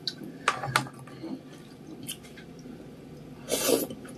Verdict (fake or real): real